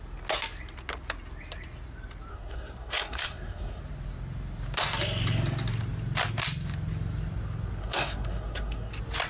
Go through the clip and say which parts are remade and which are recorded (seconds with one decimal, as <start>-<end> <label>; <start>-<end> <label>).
0.0-2.3 recorded; 2.3-3.8 remade; 3.8-7.8 recorded; 7.8-8.9 remade; 8.9-9.3 recorded